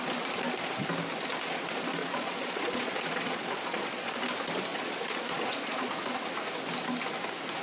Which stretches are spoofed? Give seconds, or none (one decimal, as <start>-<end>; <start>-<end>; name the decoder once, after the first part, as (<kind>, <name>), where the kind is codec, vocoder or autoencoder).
2.0-4.2 (vocoder, Vocos); 4.7-5.9